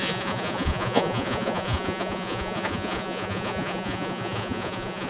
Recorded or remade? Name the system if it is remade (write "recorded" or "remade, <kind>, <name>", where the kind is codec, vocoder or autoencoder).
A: remade, vocoder, Vocos